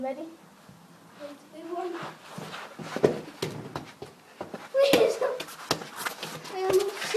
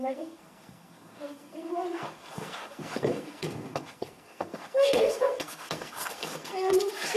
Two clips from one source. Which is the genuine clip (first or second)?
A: first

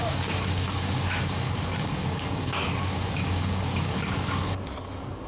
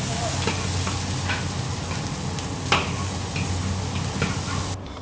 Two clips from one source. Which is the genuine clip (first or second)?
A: second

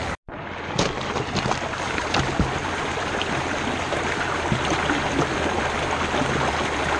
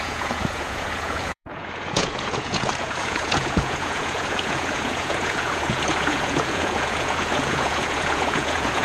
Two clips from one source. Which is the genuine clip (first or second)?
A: first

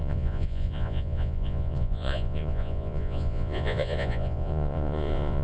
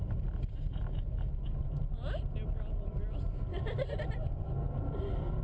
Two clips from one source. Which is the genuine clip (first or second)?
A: second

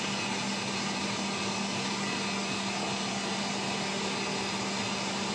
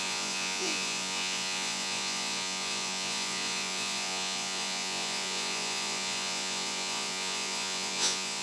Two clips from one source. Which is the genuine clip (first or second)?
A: first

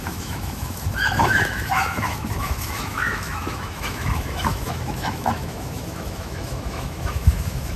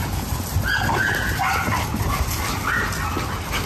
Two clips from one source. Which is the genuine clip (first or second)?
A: second